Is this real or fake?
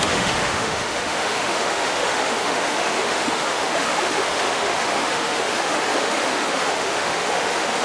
fake